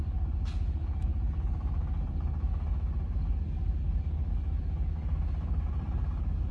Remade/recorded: recorded